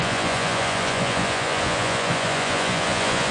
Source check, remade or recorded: remade